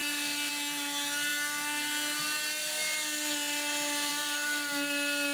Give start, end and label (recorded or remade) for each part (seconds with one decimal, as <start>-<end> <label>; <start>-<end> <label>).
0.0-5.3 recorded